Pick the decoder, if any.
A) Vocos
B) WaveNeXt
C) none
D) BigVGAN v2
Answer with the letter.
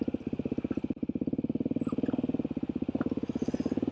C